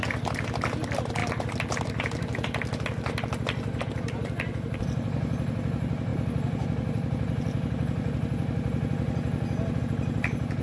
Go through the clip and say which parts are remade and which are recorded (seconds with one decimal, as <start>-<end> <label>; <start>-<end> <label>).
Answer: 0.0-10.6 recorded